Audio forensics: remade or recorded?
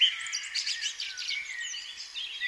recorded